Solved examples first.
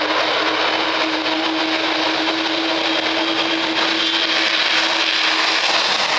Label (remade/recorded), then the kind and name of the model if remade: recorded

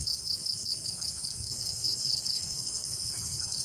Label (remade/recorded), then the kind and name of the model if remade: remade, codec, SNAC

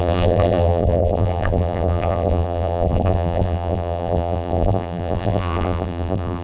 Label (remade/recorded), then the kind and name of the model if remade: remade, vocoder, BigVGAN v2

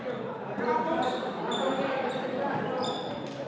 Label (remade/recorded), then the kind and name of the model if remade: remade, vocoder, BigVGAN v2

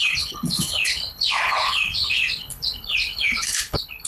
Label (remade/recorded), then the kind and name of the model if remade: remade, codec, HILCodec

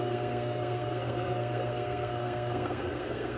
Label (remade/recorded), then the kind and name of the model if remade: remade, codec, SNAC